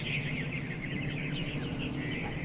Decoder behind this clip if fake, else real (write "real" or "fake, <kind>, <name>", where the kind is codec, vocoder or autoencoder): real